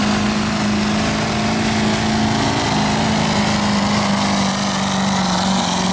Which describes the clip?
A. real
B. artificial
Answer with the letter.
A